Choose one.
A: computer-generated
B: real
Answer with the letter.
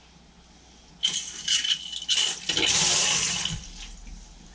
B